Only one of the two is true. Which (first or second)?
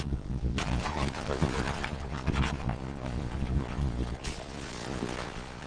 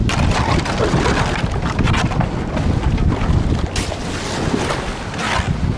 second